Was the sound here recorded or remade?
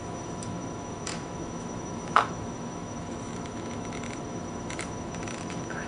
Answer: remade